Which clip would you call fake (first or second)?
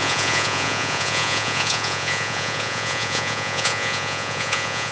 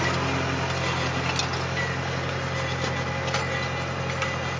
first